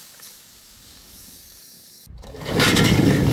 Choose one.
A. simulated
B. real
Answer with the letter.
A